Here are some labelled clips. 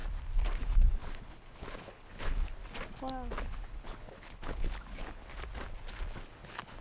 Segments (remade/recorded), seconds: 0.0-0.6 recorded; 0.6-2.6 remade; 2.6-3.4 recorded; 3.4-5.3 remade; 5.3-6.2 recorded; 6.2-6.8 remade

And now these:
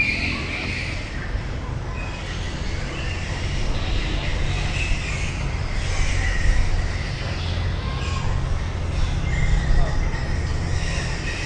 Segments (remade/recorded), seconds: 0.0-11.5 recorded

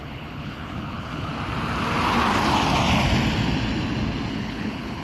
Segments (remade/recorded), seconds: 0.0-1.3 remade; 1.3-4.3 recorded; 4.3-5.0 remade

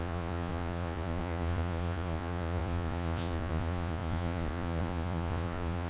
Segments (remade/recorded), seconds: 0.0-5.9 remade

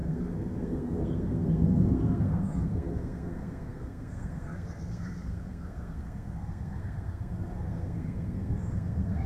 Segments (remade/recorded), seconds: 0.0-9.3 remade

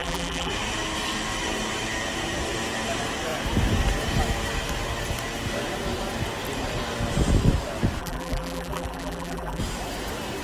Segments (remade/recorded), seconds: 0.0-0.5 remade; 0.5-8.0 recorded; 8.0-9.6 remade; 9.6-10.4 recorded